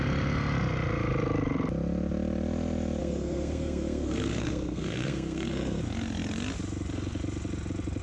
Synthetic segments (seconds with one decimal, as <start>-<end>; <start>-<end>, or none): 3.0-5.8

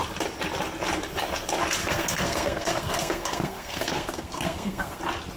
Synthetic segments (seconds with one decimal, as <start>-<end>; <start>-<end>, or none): 1.8-5.0

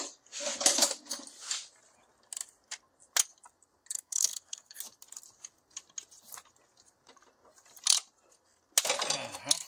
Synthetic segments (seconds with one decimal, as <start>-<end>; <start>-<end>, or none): 3.8-4.8

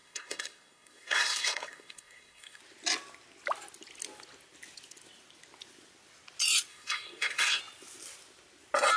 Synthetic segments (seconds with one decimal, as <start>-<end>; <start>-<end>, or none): 0.0-2.6; 6.7-7.6

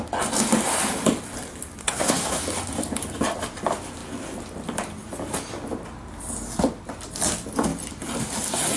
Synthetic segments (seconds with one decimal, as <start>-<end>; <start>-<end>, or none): 1.8-2.4

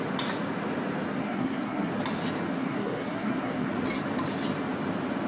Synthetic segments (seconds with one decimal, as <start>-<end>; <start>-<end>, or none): 1.2-1.9; 2.6-3.7